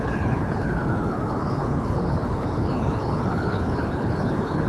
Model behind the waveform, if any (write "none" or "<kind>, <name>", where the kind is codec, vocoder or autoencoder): codec, HILCodec